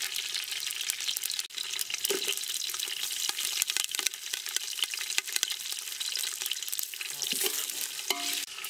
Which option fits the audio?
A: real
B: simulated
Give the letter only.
A